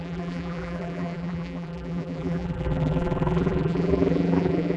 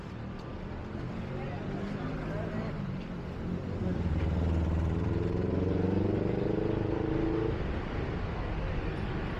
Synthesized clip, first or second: first